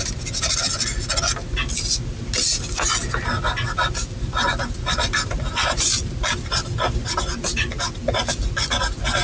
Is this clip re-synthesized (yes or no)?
no